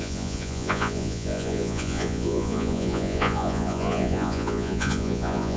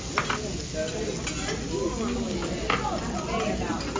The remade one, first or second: first